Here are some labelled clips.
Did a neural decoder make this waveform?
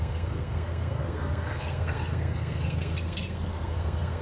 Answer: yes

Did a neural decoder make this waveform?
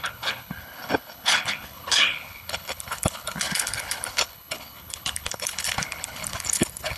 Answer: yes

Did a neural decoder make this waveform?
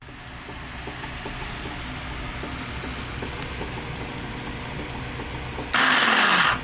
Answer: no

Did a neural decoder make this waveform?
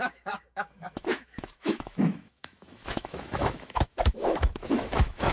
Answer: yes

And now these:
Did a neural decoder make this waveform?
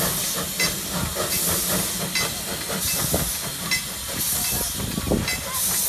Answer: no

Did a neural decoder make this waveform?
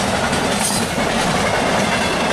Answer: no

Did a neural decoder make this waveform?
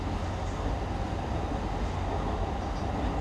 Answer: no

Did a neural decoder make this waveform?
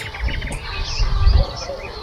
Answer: no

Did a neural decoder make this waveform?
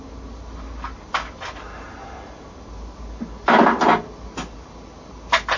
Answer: no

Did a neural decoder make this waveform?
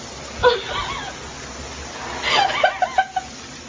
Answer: no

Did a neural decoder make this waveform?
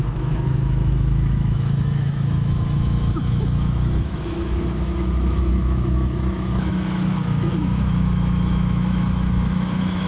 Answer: yes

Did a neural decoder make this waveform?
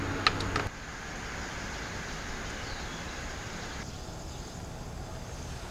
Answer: no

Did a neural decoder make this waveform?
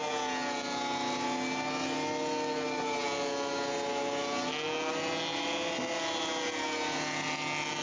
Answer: no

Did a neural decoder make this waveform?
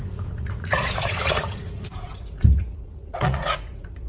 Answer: yes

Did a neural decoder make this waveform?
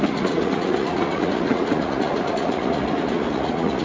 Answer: yes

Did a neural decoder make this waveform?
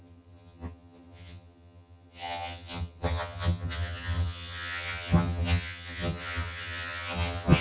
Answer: yes